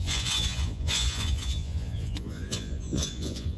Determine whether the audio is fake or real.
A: fake